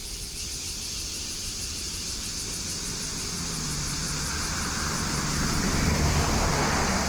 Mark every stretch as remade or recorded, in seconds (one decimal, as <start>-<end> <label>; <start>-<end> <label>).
0.0-2.5 remade; 2.5-4.0 recorded; 4.0-6.5 remade; 6.5-7.1 recorded